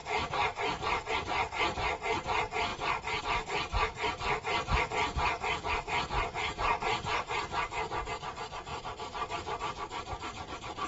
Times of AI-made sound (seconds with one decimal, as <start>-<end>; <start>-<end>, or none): 0.0-1.1; 8.7-10.9